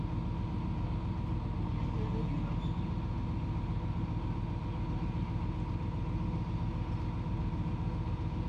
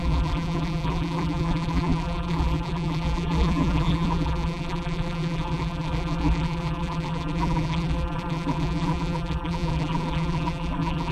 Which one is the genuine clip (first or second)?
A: first